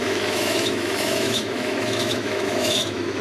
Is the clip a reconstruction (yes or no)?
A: yes